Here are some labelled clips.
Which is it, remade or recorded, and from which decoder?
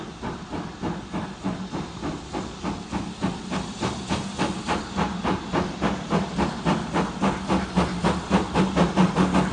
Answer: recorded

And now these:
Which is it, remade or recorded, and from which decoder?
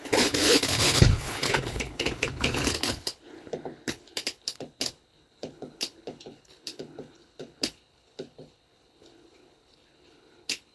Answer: remade, codec, HILCodec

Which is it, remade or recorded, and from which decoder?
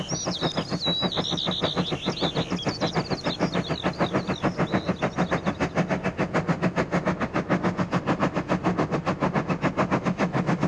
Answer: recorded